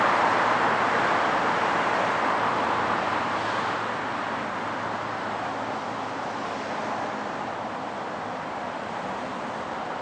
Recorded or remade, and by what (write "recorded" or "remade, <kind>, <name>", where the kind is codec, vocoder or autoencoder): recorded